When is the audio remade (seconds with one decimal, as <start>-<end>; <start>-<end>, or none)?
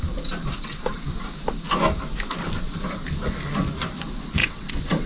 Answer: 4.4-5.1